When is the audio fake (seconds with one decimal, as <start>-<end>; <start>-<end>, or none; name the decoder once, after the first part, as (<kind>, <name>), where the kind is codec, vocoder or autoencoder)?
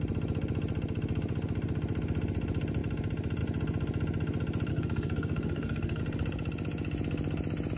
4.7-6.0 (codec, SNAC)